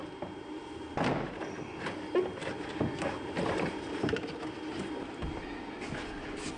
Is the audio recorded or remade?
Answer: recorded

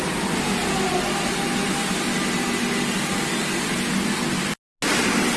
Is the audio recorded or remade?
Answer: recorded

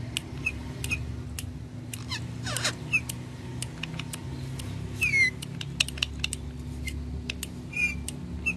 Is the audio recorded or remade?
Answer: recorded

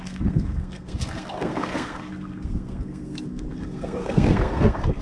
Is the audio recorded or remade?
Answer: remade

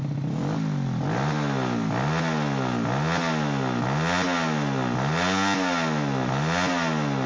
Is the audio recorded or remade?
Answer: recorded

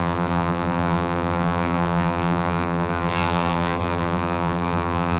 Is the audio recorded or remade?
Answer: remade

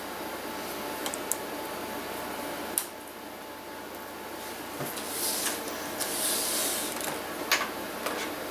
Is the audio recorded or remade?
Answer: recorded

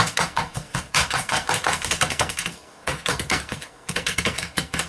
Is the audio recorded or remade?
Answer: remade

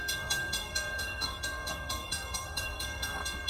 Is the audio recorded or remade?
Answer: remade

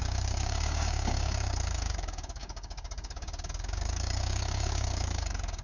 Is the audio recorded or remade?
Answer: remade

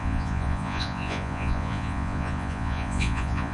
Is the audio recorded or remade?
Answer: remade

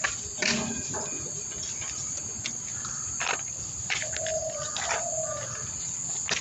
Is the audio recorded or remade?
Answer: recorded